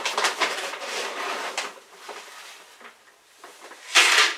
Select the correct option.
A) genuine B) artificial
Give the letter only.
A